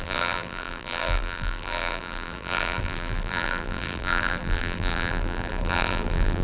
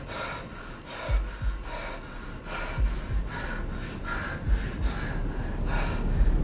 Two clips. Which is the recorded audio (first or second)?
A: second